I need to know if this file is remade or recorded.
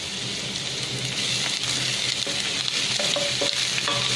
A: recorded